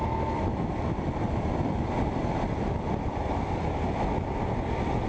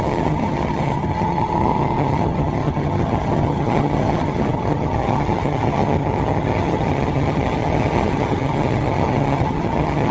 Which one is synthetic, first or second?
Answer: second